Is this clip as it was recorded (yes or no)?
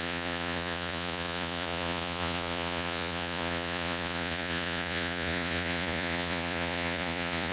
no